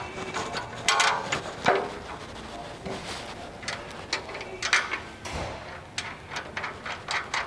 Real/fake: real